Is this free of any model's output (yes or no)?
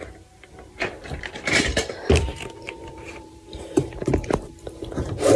no